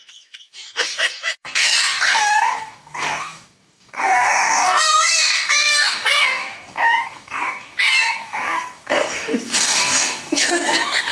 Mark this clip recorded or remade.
remade